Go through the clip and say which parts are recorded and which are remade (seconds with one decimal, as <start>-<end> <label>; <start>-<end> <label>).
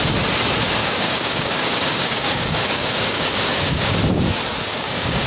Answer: 0.0-0.8 recorded; 0.8-4.0 remade; 4.0-4.7 recorded; 4.7-5.3 remade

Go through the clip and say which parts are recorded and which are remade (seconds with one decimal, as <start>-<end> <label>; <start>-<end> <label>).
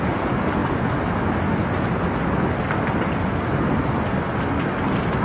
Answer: 0.0-5.2 recorded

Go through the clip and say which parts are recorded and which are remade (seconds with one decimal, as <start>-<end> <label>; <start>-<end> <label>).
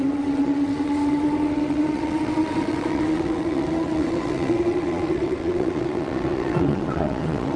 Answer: 0.0-7.6 remade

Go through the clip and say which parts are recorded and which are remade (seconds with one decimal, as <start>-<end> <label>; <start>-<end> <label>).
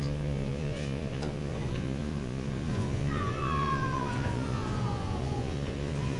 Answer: 0.0-6.2 remade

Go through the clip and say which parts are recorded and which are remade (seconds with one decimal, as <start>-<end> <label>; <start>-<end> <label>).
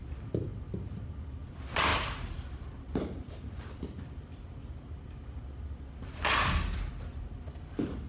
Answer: 0.0-8.1 recorded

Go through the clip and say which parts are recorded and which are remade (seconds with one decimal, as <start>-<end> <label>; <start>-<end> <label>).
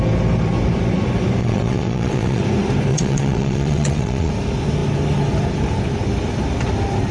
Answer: 0.0-1.4 recorded; 1.4-2.4 remade; 2.4-2.9 recorded; 2.9-4.3 remade; 4.3-7.1 recorded